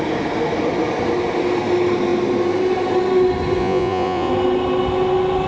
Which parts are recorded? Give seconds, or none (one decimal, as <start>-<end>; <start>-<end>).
0.0-3.6; 4.3-5.5